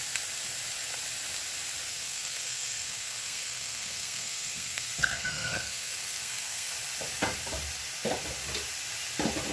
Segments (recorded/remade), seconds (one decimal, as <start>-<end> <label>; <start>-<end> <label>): 0.0-1.9 recorded; 1.9-6.7 remade; 6.7-9.5 recorded